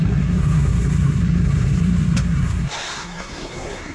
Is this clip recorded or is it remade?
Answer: remade